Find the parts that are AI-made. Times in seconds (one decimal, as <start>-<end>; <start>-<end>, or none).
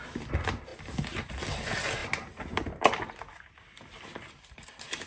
none